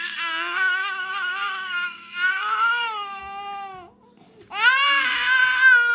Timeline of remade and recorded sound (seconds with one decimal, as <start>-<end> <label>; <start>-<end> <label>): 0.0-3.2 remade; 3.2-5.9 recorded